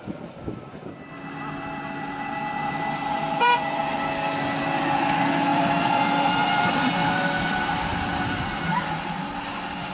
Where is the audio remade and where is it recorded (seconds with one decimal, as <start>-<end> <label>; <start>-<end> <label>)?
0.0-3.2 recorded; 3.2-3.8 remade; 3.8-5.5 recorded; 5.5-6.9 remade; 6.9-7.9 recorded; 7.9-8.4 remade; 8.4-9.9 recorded